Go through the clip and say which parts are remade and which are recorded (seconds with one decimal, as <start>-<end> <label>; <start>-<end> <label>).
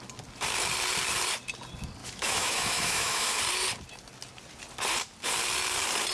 0.0-2.0 recorded; 2.0-3.4 remade; 3.4-6.1 recorded